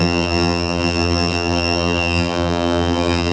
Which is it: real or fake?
fake